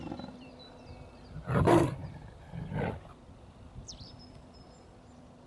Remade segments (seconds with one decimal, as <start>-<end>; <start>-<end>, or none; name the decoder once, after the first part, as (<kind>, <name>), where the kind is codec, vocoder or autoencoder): 0.0-5.5 (vocoder, BigVGAN v2)